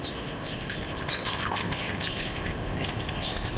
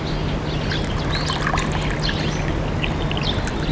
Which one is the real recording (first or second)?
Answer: second